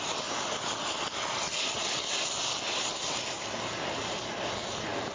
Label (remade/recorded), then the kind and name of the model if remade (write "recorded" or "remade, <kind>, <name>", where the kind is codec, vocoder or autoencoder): recorded